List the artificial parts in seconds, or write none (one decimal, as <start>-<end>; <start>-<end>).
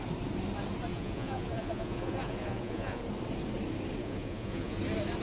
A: 0.9-3.0; 4.0-4.8